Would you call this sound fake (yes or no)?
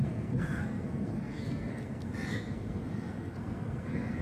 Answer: yes